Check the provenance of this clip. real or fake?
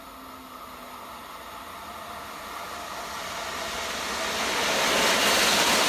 real